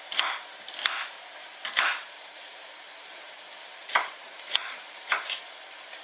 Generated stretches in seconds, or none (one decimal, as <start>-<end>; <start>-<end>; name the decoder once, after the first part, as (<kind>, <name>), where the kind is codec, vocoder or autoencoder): 1.9-3.4 (vocoder, BigVGAN v2); 3.8-5.1